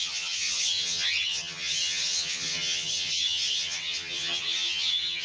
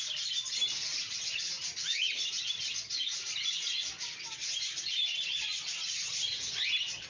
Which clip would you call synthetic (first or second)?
first